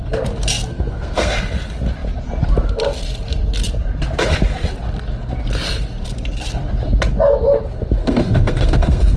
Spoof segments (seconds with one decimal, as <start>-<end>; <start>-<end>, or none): 0.7-1.3; 8.0-9.2